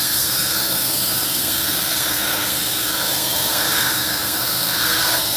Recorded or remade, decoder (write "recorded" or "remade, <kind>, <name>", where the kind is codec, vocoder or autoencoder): remade, codec, SNAC